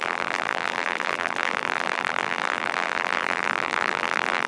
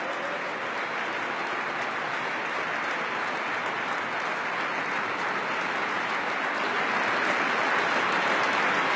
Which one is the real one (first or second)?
second